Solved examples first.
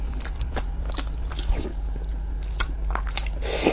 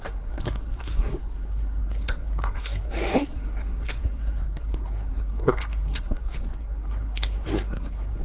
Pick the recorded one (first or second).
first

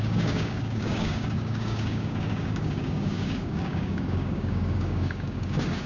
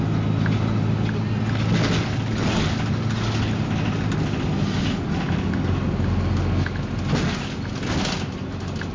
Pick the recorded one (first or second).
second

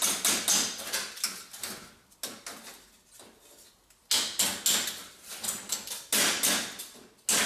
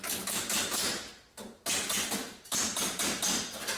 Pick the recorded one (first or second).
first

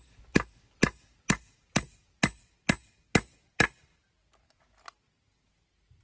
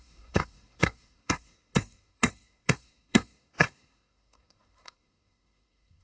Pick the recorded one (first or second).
first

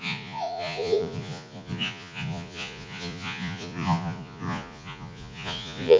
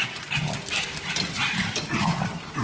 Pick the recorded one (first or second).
second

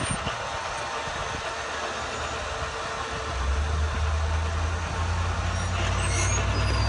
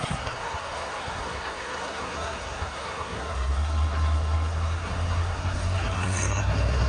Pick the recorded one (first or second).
first